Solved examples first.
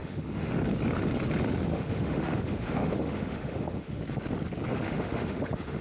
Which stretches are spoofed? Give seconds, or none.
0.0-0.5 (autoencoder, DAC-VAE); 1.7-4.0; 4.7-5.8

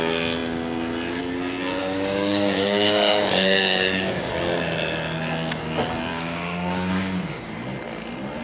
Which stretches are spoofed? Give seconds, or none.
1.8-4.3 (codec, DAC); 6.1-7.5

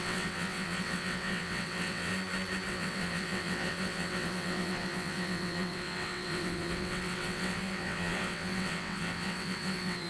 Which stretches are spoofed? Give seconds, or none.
0.0-2.1 (vocoder, WaveNeXt); 2.7-10.1